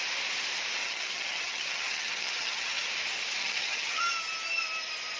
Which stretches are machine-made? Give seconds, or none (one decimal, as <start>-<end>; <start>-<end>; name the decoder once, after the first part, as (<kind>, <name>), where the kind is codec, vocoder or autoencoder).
0.8-2.9 (vocoder, HiFi-GAN); 3.4-4.0